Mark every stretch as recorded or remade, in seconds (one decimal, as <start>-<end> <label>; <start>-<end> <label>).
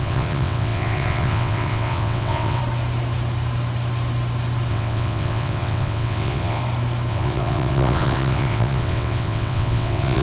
0.0-2.6 remade; 2.6-4.7 recorded; 4.7-6.6 remade; 6.6-7.1 recorded; 7.1-10.2 remade